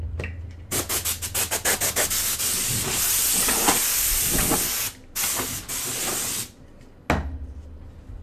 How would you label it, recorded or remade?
recorded